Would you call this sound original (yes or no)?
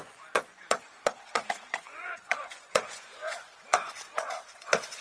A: no